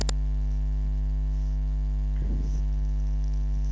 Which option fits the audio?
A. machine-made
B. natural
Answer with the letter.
B